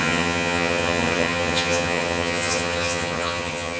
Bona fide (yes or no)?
no